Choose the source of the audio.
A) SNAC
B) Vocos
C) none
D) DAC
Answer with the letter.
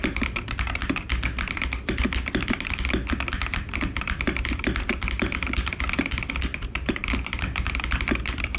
C